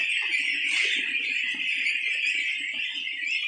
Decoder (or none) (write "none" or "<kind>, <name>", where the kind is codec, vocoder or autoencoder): none